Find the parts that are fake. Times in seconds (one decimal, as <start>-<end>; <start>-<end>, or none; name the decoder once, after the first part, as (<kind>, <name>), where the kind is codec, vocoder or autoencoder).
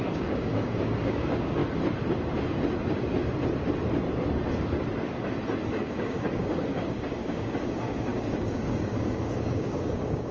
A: 0.0-1.6 (codec, DAC); 5.7-10.3